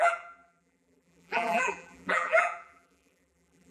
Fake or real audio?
fake